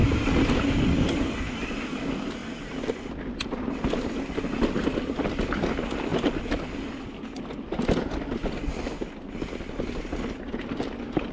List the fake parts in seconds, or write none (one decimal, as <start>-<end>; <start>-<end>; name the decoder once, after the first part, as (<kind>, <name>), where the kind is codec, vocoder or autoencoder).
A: none